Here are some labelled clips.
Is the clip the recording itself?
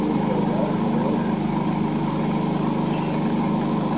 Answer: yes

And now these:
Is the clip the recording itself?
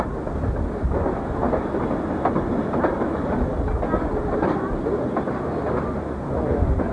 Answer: yes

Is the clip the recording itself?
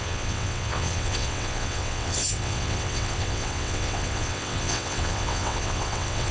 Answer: no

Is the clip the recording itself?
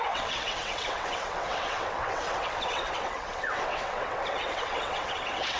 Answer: no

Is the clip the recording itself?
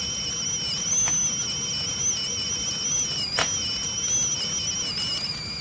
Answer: yes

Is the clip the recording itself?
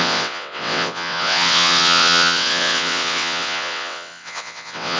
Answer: no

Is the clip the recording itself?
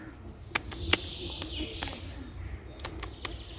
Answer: yes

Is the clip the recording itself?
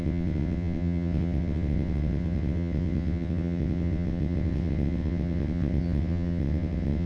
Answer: no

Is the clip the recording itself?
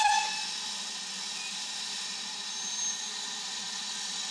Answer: yes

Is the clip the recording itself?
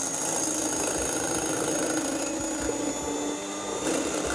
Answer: yes